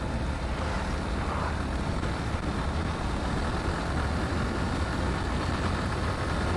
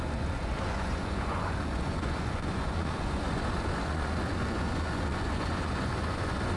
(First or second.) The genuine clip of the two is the first